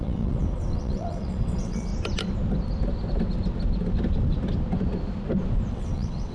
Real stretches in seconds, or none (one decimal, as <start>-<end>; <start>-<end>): 1.9-5.7